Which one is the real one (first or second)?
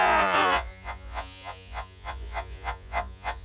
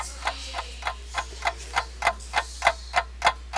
second